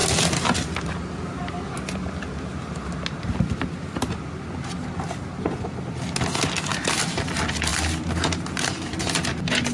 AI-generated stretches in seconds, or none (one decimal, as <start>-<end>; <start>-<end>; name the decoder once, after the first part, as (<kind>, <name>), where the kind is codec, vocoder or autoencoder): none